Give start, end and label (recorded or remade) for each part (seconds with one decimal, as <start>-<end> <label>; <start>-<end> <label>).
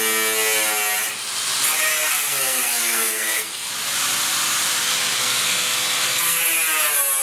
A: 0.0-2.0 recorded; 2.0-3.7 remade; 3.7-5.2 recorded; 5.2-6.4 remade; 6.4-7.2 recorded